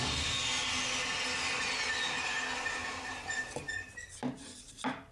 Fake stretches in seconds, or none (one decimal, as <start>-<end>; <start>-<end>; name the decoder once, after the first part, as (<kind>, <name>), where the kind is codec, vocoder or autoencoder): 2.8-3.6 (vocoder, BigVGAN v2)